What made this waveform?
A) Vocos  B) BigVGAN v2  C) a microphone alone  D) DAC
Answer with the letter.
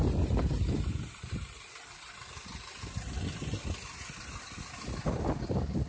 C